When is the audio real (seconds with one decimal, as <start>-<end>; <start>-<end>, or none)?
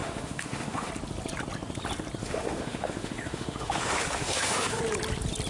0.9-2.2; 4.8-5.5